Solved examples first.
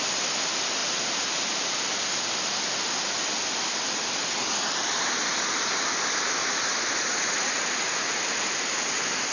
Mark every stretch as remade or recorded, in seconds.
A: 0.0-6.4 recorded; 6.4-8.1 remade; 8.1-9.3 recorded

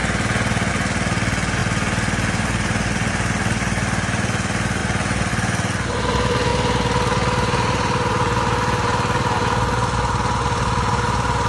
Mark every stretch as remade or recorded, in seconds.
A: 0.0-11.5 recorded

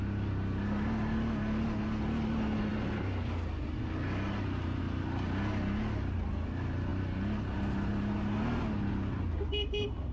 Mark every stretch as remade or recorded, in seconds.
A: 0.0-10.1 recorded

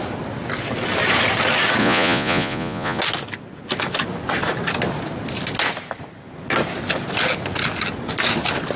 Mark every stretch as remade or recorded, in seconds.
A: 0.0-1.8 recorded; 1.8-3.0 remade; 3.0-8.8 recorded

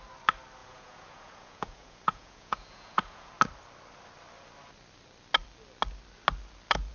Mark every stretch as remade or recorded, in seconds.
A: 0.0-0.6 recorded; 0.6-3.3 remade; 3.3-6.9 recorded

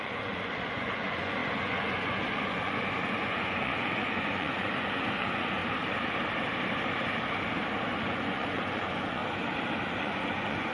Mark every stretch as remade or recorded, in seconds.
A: 0.0-5.6 remade; 5.6-8.0 recorded; 8.0-9.2 remade; 9.2-9.9 recorded; 9.9-10.7 remade